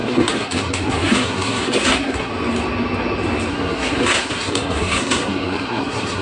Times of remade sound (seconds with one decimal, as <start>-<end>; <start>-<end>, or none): 0.0-2.3; 3.5-6.2